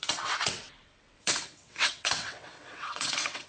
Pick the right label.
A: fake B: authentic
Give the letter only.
A